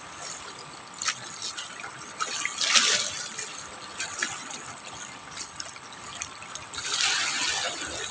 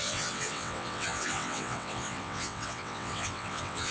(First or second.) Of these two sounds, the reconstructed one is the second